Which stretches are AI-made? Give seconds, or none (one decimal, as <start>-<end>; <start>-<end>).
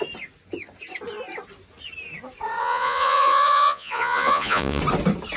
2.6-4.8